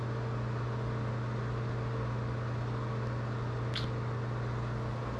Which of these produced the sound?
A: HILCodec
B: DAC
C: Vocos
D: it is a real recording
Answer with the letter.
D